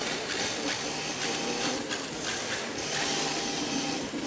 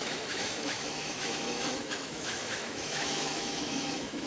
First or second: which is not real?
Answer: second